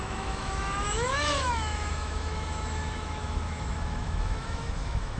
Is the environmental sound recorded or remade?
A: remade